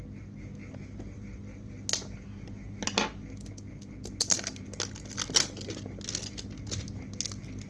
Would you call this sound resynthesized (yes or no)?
no